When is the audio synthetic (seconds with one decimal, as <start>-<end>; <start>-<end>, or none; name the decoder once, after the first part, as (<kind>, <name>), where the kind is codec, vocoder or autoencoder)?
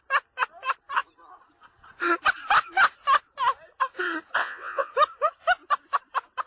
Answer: 4.4-4.9 (vocoder, WaveNeXt)